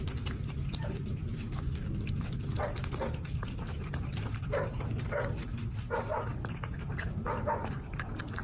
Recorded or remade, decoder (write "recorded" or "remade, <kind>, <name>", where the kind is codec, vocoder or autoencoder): remade, vocoder, BigVGAN v2